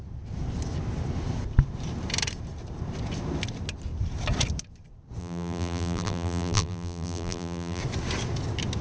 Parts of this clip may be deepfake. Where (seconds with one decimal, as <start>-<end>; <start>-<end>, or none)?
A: 5.2-7.8